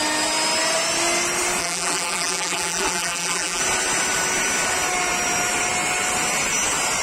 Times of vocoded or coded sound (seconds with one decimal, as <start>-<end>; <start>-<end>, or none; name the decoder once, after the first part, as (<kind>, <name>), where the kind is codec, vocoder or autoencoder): 1.6-3.6 (vocoder, BigVGAN v2)